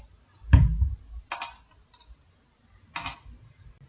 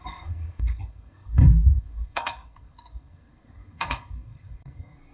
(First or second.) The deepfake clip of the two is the second